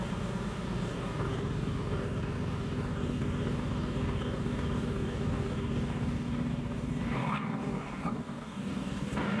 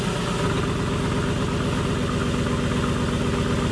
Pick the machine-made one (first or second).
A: first